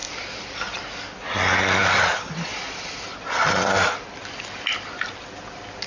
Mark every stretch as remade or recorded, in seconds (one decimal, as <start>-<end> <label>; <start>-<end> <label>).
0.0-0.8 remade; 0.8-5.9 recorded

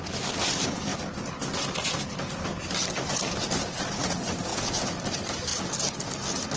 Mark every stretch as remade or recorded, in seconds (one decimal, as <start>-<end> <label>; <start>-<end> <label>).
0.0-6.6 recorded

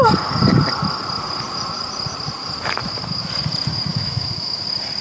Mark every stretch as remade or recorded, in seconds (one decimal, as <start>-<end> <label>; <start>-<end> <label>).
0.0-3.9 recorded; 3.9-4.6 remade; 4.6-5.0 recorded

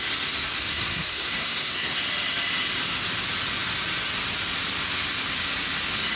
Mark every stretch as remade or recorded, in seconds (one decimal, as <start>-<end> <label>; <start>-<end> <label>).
0.0-0.7 recorded; 0.7-2.0 remade; 2.0-6.2 recorded